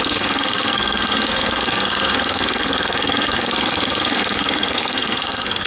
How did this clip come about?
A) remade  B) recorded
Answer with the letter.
A